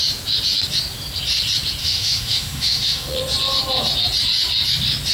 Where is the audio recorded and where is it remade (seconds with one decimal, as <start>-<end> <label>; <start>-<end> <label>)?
0.0-1.8 recorded; 1.8-3.2 remade; 3.2-5.1 recorded